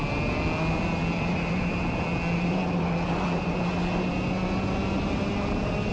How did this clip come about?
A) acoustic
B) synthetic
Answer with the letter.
A